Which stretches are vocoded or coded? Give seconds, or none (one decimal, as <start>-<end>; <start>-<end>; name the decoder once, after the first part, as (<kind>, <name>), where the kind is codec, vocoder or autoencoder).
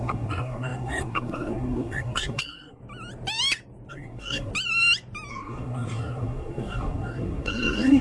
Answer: 0.0-2.8 (codec, SNAC); 3.9-4.5; 5.3-8.0